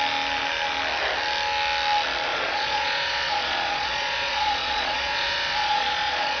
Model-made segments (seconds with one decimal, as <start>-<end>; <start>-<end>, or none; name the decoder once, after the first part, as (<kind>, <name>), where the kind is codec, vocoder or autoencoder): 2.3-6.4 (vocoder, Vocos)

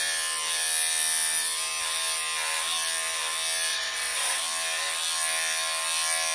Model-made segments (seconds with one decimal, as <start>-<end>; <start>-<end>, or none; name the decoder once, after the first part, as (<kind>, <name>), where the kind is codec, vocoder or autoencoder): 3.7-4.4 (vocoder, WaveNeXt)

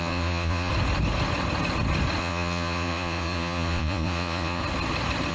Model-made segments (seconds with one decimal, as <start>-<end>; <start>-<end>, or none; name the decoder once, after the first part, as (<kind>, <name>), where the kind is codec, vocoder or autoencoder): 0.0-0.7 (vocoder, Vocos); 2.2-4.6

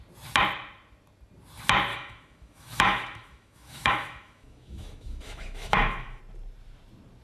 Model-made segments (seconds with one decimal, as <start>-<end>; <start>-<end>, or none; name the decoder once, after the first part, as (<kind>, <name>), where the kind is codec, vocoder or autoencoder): 1.9-6.2 (autoencoder, DAC-VAE)